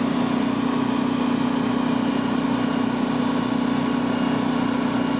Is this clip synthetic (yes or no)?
no